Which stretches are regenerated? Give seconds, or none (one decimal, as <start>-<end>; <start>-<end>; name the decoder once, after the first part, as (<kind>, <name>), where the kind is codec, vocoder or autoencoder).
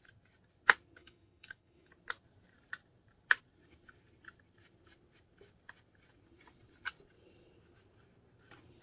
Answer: 1.0-1.9 (autoencoder, DAC-VAE)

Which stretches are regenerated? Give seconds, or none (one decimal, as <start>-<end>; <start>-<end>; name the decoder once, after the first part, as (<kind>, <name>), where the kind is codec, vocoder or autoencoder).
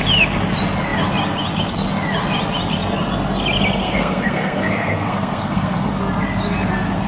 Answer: 3.8-6.0 (codec, SNAC)